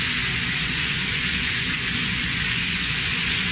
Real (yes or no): no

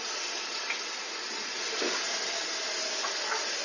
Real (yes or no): yes